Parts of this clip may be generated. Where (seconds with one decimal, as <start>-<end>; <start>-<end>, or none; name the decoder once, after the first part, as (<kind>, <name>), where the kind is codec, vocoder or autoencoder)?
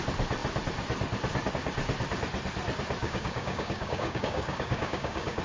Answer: 3.0-5.4 (codec, DAC)